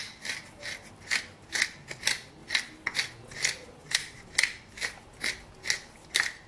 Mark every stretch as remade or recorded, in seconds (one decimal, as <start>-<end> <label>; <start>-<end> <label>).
0.0-6.5 recorded